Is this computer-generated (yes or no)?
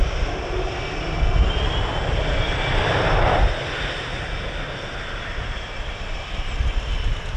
no